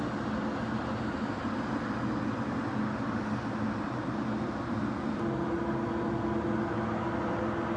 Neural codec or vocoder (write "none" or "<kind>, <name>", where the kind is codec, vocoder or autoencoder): none